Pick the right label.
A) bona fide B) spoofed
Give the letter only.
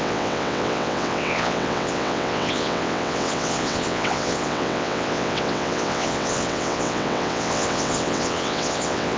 B